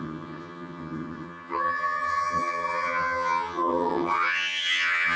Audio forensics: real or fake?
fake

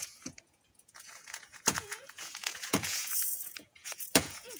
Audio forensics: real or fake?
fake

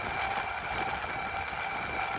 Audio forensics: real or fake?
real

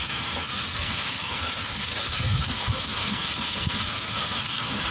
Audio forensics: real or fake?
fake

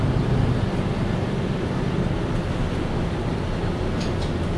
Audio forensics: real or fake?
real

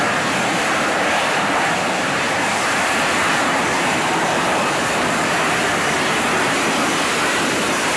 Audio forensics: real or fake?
fake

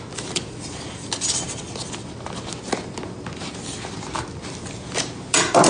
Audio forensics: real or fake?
real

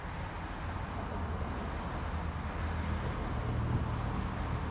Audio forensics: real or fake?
real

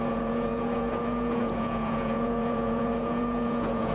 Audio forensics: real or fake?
fake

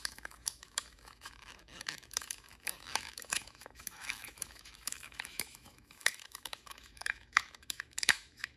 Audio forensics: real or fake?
fake